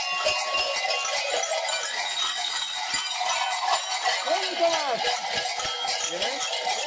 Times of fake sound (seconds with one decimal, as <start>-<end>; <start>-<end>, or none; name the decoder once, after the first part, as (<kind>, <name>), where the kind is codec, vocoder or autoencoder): 1.9-2.8 (vocoder, WaveNeXt)